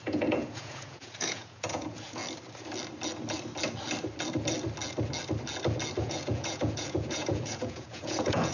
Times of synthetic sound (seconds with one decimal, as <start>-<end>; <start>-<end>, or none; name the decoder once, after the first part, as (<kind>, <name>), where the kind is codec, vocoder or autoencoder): 0.0-2.2 (vocoder, Vocos); 6.0-8.5